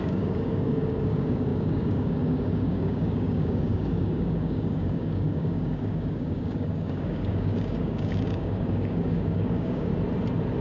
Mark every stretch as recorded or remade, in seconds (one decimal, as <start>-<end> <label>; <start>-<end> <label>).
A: 0.0-9.9 remade; 9.9-10.6 recorded

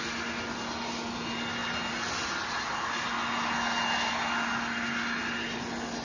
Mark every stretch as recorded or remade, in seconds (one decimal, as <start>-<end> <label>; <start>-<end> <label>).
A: 0.0-6.0 recorded

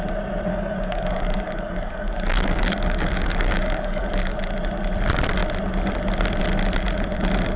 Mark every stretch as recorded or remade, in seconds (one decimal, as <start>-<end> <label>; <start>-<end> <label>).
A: 0.0-0.5 recorded; 0.5-4.4 remade; 4.4-7.6 recorded

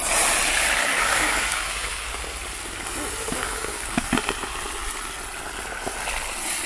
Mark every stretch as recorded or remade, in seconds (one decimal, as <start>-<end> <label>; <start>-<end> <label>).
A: 0.0-0.8 recorded; 0.8-2.2 remade; 2.2-3.3 recorded; 3.3-4.0 remade; 4.0-6.7 recorded

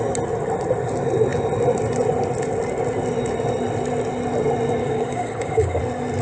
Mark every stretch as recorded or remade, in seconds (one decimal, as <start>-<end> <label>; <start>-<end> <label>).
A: 0.0-4.8 recorded; 4.8-5.8 remade; 5.8-6.2 recorded

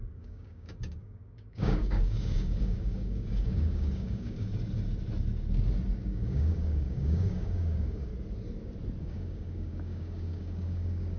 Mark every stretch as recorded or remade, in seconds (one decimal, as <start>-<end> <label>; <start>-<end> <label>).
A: 0.0-4.5 remade; 4.5-6.0 recorded; 6.0-8.1 remade; 8.1-9.0 recorded; 9.0-11.2 remade

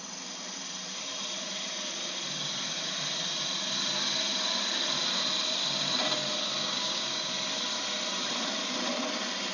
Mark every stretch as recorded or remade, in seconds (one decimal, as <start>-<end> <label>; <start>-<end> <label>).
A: 0.0-6.6 recorded; 6.6-7.3 remade; 7.3-9.5 recorded

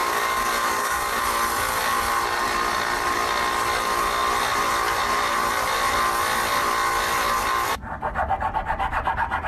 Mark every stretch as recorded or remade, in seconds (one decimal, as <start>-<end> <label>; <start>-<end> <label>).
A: 0.0-1.2 remade; 1.2-9.5 recorded